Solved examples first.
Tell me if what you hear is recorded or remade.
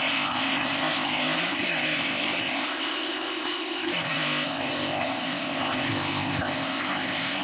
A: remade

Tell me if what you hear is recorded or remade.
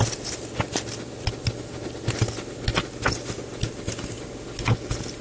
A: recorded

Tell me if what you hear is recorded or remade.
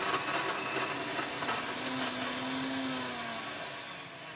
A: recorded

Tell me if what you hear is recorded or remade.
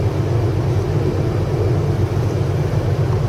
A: recorded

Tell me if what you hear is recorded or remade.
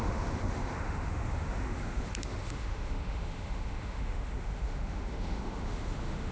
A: remade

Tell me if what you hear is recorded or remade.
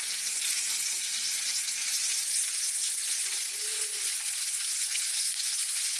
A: remade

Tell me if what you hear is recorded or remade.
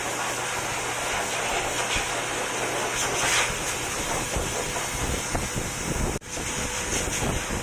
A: recorded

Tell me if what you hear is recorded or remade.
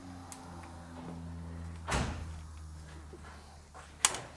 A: recorded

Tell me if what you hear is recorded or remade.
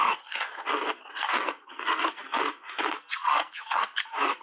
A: remade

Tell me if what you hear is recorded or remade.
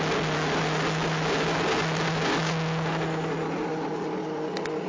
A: recorded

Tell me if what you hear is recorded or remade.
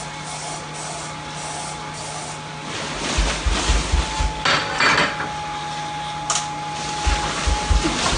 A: recorded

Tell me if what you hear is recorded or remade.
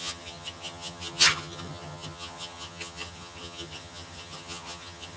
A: remade